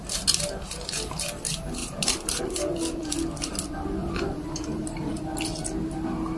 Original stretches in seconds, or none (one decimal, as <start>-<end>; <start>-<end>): 0.0-1.8; 2.4-4.0; 5.2-6.4